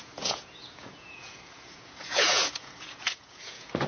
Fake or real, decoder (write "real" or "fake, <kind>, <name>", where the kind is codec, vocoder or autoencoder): fake, vocoder, Vocos